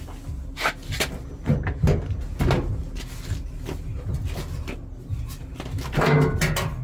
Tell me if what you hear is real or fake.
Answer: real